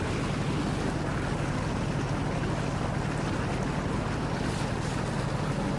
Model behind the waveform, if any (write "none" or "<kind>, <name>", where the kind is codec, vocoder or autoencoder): none